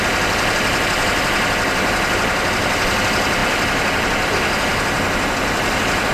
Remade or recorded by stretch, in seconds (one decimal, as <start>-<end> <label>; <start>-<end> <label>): 0.0-4.7 remade; 4.7-6.1 recorded